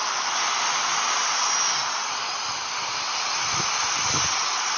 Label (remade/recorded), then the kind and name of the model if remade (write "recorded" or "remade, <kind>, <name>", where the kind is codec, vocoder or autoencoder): recorded